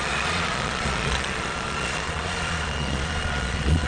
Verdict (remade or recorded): remade